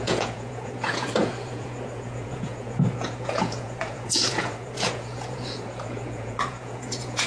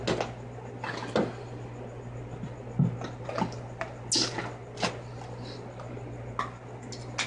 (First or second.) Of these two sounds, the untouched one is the second